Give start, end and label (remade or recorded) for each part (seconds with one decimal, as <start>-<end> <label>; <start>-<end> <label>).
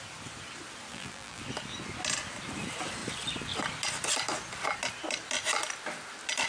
0.0-0.9 recorded; 0.9-1.4 remade; 1.4-6.5 recorded